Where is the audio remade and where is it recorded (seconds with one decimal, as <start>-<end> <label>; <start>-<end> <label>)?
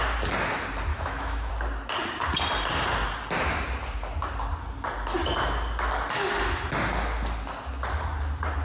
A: 0.0-0.9 recorded; 0.9-1.5 remade; 1.5-8.6 recorded